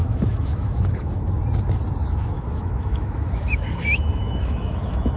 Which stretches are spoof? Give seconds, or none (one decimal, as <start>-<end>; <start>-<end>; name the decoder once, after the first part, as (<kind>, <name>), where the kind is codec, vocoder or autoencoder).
0.0-1.4 (autoencoder, DAC-VAE); 2.0-5.2